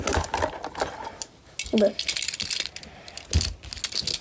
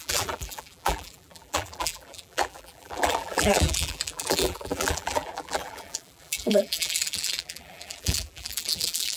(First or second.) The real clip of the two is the first